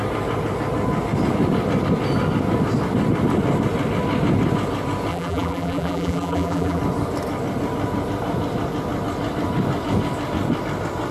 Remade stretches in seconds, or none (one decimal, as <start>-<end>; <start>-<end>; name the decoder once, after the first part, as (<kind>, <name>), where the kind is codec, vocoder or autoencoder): 5.1-6.8 (vocoder, BigVGAN v2)